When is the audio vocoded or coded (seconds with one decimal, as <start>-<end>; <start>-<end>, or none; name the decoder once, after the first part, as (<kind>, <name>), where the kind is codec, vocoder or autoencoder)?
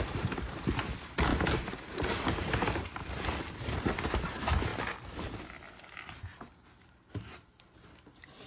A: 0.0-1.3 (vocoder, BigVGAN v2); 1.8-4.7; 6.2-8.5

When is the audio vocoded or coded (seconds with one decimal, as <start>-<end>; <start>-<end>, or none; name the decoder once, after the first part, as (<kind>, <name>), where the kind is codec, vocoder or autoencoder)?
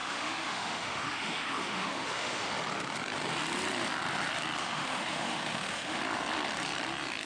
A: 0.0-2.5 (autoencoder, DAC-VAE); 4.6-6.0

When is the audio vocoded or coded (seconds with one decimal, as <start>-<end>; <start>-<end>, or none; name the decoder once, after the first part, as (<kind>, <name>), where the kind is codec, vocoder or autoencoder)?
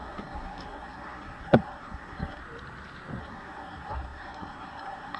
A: 0.0-2.4 (codec, SNAC); 3.2-5.2